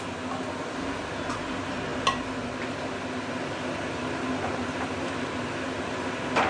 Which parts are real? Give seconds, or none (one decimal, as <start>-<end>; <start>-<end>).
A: 0.0-6.5